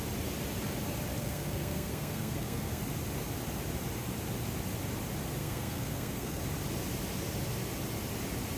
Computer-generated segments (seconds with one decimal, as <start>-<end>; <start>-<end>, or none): 1.2-2.8; 5.4-6.4

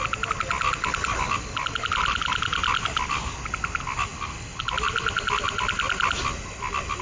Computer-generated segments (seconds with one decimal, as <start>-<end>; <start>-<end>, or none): none